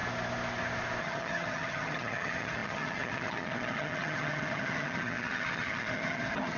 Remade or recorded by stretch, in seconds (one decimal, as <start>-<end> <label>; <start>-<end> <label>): 0.0-1.0 recorded; 1.0-6.6 remade

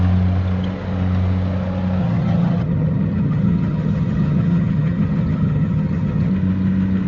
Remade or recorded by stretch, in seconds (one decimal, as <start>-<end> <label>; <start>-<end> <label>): 0.0-2.0 recorded; 2.0-6.3 remade; 6.3-7.1 recorded